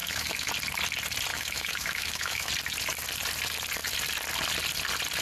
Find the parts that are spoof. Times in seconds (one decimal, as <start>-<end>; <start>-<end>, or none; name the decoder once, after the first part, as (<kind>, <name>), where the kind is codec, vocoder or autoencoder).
0.0-0.5 (autoencoder, DAC-VAE); 1.3-2.5